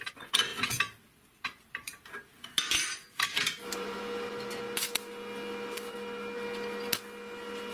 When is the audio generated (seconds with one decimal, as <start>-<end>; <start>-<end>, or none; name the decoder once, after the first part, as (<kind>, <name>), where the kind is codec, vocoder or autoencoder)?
0.5-4.0 (vocoder, BigVGAN v2)